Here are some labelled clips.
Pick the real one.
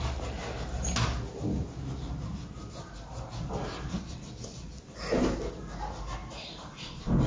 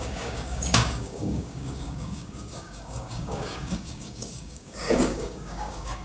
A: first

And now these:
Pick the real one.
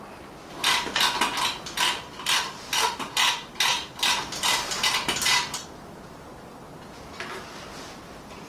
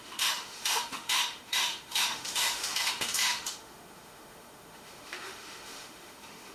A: first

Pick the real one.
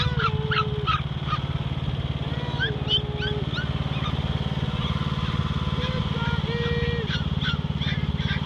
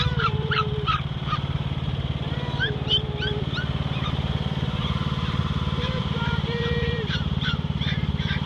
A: first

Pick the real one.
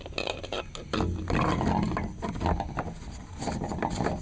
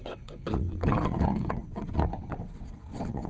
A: first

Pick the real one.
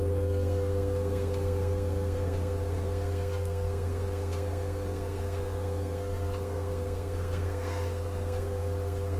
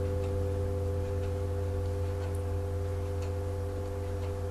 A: second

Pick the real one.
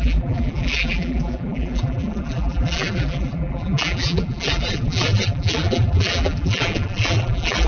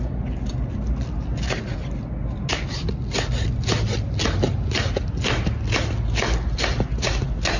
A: second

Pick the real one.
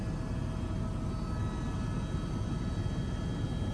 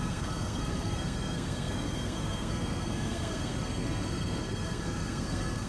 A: first